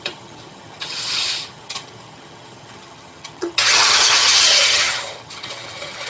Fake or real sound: fake